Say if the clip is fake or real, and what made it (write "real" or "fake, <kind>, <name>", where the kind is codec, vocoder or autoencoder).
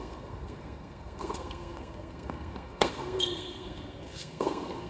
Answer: fake, codec, SNAC